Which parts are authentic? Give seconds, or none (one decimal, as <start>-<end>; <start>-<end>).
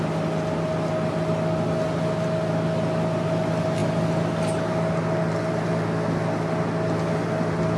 0.0-7.8